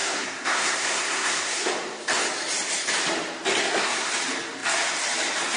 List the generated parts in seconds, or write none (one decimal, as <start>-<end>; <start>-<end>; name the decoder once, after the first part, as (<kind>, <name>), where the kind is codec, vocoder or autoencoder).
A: 0.0-1.7 (codec, SNAC); 3.6-4.1